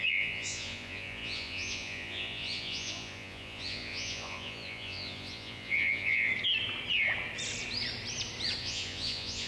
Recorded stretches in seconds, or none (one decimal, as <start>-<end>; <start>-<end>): 6.3-8.6